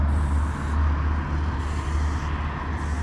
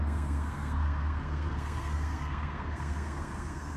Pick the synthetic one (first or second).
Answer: second